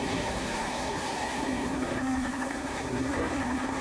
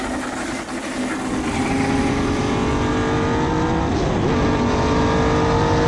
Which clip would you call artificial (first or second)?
first